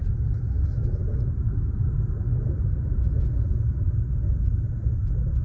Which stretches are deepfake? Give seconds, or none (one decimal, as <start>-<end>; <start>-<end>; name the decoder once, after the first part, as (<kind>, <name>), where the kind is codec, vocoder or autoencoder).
none